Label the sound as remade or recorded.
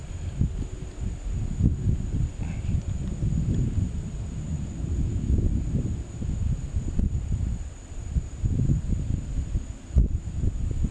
recorded